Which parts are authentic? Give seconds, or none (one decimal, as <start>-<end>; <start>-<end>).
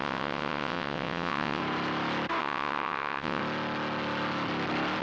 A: 1.6-2.4; 3.4-5.0